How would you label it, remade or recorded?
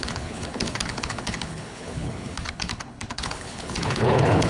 remade